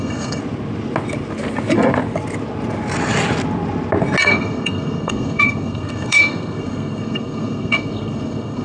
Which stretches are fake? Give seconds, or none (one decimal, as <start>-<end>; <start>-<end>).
0.0-0.4; 4.2-8.6